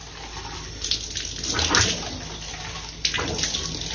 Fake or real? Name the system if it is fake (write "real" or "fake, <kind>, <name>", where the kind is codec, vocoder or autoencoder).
real